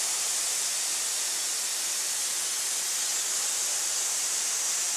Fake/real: real